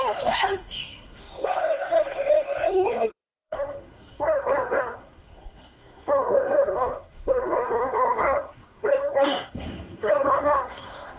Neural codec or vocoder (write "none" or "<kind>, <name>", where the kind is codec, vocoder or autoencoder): codec, SNAC